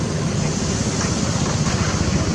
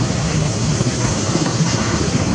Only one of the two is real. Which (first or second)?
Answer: first